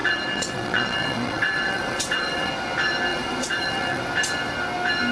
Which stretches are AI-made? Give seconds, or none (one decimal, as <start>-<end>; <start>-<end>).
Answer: 0.0-2.5; 3.1-4.0